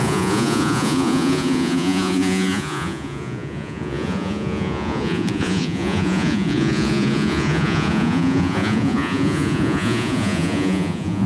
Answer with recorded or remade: remade